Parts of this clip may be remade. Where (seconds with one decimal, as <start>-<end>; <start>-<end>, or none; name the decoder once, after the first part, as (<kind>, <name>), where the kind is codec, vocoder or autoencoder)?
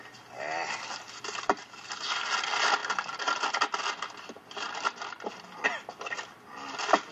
none